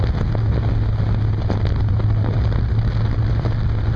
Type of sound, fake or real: real